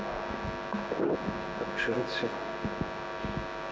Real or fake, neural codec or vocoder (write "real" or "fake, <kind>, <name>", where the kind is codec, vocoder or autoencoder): real